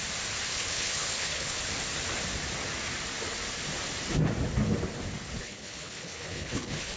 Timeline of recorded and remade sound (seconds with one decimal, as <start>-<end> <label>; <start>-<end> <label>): 0.0-0.5 recorded; 0.5-1.6 remade; 1.6-5.4 recorded; 5.4-7.0 remade